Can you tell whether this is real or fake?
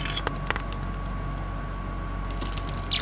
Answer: real